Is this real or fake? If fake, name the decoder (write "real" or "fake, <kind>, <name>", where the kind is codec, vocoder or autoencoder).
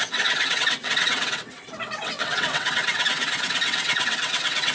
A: fake, vocoder, WaveNeXt